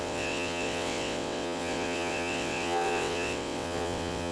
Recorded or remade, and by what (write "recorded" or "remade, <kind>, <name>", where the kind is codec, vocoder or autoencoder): remade, vocoder, WaveNeXt